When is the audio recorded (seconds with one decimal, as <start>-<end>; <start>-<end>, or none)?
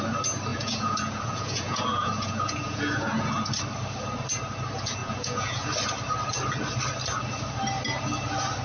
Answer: 0.0-0.5; 3.3-5.0; 5.7-8.6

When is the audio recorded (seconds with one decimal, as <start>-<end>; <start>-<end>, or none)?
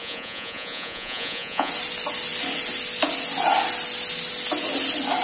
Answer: 1.7-5.2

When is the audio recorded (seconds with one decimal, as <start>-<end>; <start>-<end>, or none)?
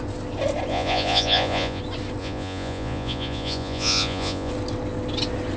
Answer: 0.0-0.7; 1.8-2.2; 4.5-5.6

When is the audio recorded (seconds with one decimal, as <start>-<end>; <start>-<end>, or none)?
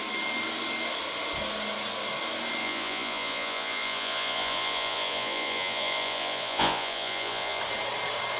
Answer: 0.0-2.6; 7.6-8.4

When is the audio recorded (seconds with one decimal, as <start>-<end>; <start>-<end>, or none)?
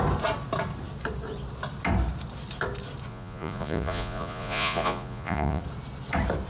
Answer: 0.0-3.1; 5.6-6.5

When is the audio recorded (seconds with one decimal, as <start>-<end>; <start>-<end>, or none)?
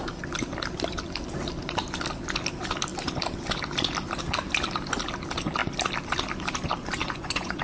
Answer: 0.0-7.0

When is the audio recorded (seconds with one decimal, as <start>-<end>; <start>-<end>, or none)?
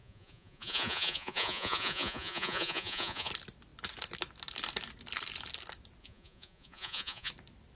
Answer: 3.3-6.0; 7.3-7.8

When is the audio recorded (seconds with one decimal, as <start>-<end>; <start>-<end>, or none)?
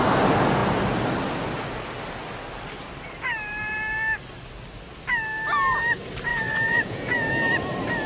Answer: 0.0-6.3; 7.3-8.1